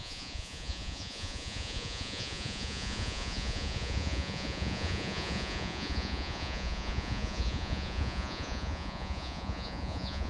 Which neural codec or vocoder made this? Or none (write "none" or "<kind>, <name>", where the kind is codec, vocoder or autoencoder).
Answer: vocoder, Vocos